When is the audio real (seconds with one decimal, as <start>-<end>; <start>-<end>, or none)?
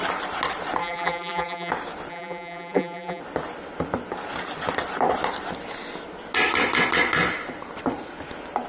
0.0-0.8; 1.7-2.1; 3.2-8.7